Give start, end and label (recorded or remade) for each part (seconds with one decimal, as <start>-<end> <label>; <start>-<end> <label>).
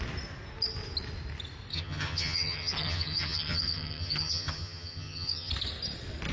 0.0-1.7 recorded; 1.7-5.5 remade; 5.5-6.3 recorded